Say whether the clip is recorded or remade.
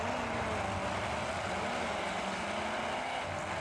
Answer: recorded